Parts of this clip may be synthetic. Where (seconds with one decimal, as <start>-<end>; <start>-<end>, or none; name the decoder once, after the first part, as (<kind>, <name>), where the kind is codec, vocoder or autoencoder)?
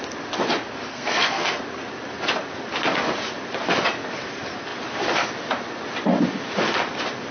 0.9-1.6 (codec, SNAC)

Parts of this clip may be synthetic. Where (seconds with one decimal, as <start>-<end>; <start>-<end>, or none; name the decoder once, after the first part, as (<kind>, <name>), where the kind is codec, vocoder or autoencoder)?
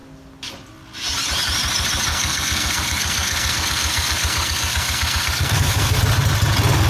2.1-6.0 (codec, SNAC)